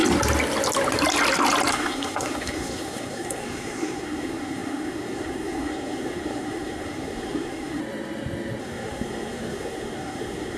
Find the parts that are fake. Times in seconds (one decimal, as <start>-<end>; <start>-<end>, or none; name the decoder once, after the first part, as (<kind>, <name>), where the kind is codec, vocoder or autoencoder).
1.7-7.8 (codec, SNAC); 8.6-10.6